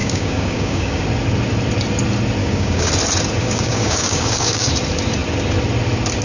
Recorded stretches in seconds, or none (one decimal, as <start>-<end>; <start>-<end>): 1.0-2.4; 2.9-3.4; 4.7-6.2